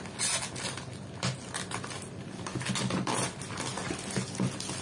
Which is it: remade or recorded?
recorded